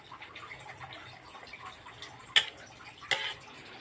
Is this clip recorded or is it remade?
recorded